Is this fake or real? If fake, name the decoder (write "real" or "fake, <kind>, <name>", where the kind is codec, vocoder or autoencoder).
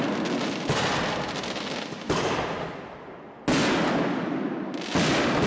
real